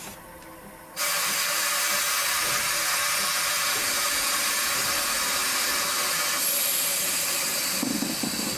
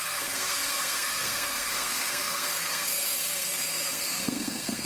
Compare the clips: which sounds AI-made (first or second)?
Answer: second